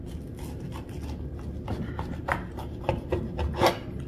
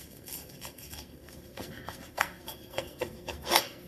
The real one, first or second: first